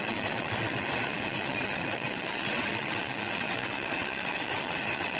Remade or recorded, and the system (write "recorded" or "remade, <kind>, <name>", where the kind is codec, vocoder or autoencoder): remade, vocoder, WaveNeXt